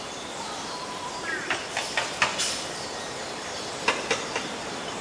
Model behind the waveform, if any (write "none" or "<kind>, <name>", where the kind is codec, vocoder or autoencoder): none